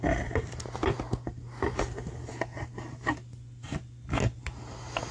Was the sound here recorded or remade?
recorded